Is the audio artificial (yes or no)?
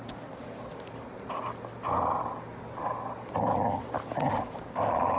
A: no